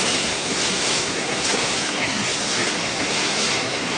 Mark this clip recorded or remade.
remade